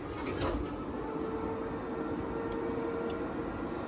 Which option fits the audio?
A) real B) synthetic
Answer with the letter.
A